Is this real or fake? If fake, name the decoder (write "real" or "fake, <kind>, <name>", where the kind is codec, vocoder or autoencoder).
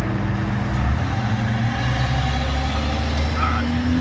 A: real